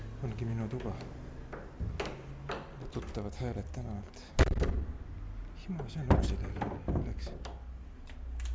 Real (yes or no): yes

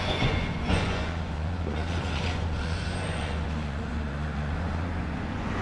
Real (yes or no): no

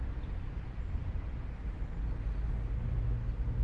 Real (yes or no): yes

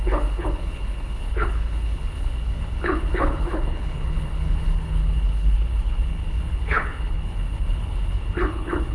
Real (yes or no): no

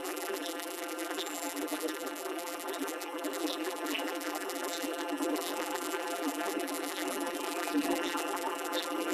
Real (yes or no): no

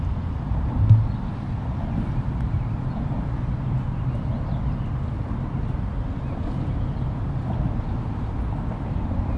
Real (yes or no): yes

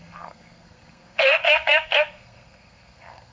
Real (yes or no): no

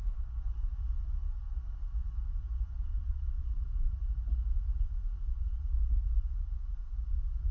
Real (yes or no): yes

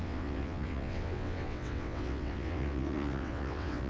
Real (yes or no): no